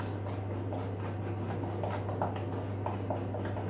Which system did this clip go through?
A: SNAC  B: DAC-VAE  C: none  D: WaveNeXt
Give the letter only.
C